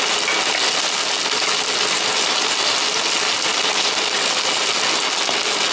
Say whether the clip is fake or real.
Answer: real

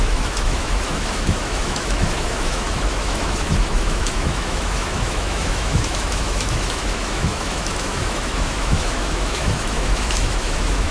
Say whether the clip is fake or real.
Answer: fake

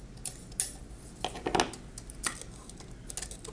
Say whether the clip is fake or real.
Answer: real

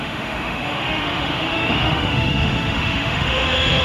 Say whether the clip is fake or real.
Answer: fake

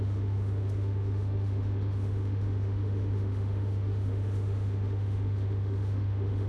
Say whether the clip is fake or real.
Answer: fake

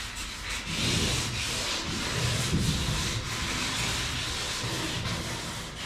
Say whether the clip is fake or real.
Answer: real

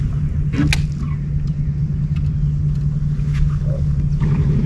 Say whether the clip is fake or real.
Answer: real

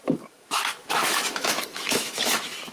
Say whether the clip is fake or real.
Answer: fake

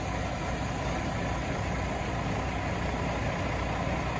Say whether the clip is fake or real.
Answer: real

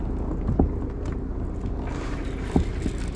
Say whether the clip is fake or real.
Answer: real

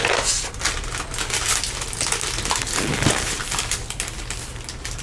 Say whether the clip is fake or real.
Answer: real